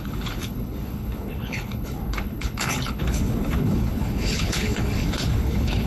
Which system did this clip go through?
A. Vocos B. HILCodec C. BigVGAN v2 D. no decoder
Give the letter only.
B